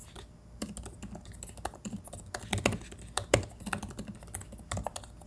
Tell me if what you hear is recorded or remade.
recorded